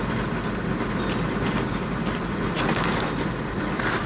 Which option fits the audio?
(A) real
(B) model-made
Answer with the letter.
A